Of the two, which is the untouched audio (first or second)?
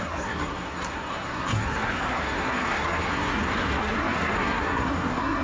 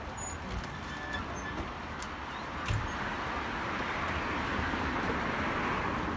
second